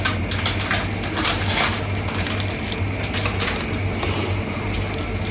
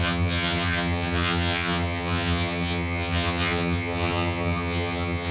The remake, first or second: second